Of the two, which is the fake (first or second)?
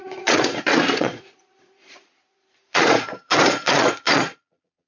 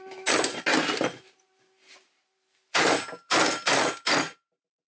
first